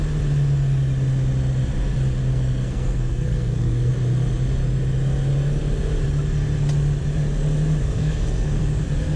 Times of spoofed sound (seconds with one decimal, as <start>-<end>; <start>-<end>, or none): 2.3-3.9; 7.8-8.6